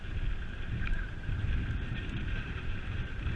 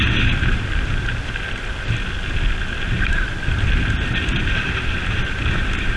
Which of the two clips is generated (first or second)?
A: first